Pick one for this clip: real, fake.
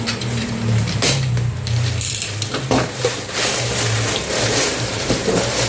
fake